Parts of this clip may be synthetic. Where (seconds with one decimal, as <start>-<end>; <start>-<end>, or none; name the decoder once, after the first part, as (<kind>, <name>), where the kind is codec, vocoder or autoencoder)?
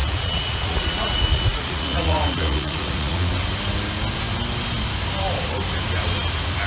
0.0-3.3 (vocoder, Vocos)